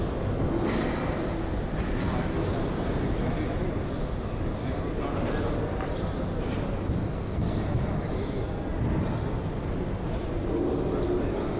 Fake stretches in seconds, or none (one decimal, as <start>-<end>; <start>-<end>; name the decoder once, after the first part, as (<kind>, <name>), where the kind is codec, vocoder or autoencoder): 7.1-7.6 (codec, SNAC)